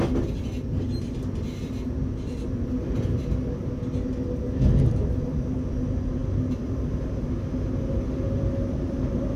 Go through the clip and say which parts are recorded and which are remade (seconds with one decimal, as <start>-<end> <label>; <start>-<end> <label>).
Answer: 0.0-9.4 recorded